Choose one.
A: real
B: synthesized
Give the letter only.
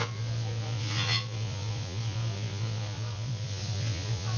B